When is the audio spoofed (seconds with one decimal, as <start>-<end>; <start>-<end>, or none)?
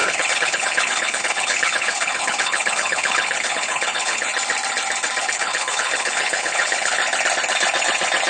0.0-4.3; 5.2-7.0